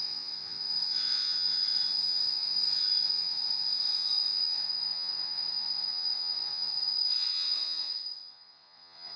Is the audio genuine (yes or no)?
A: no